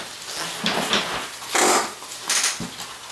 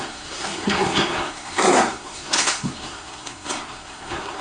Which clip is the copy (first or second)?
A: second